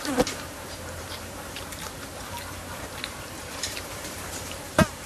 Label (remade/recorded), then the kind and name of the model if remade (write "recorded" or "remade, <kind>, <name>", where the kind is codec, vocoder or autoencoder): remade, vocoder, BigVGAN v2